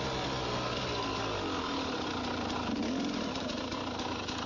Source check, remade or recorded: recorded